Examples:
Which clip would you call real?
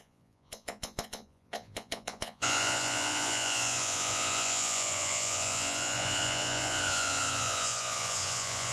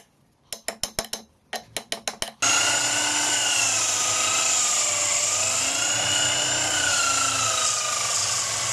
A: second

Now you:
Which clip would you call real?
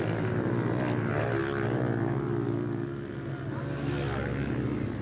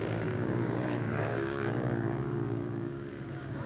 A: first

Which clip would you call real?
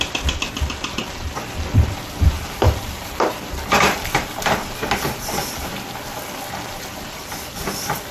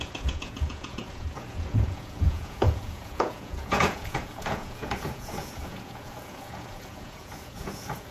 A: first